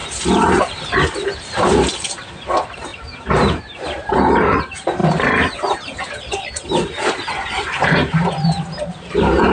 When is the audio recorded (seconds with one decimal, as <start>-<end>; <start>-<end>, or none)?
none